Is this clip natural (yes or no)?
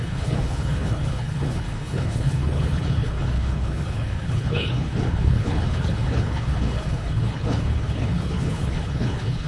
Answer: no